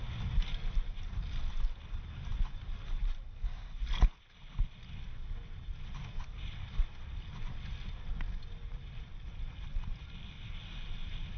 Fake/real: real